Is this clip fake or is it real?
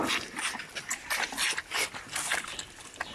real